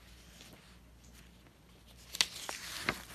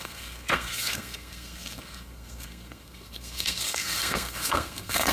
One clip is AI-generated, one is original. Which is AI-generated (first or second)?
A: second